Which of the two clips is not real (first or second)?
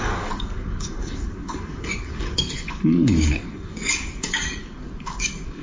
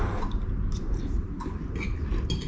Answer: first